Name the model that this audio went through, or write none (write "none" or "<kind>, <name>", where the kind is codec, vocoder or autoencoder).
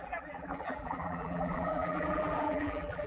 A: vocoder, BigVGAN v2